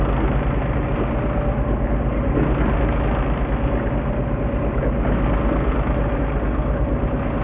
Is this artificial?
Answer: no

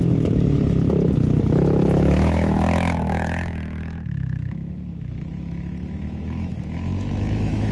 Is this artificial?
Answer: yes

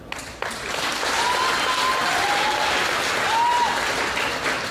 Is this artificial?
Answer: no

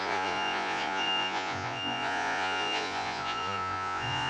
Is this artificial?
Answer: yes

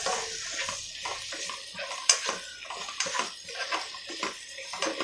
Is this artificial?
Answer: no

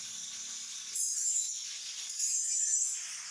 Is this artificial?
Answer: no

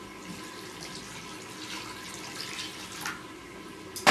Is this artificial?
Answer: no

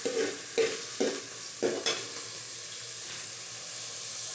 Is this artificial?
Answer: no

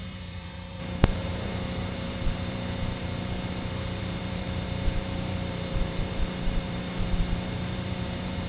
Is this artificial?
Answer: yes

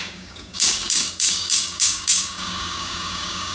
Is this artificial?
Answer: yes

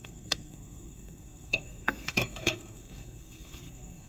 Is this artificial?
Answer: yes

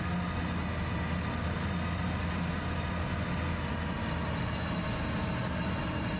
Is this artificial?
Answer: no